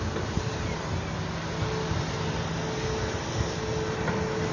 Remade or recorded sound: recorded